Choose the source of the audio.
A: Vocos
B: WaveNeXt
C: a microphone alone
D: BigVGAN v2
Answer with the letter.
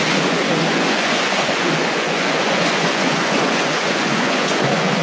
A